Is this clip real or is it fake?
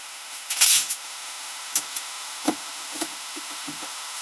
fake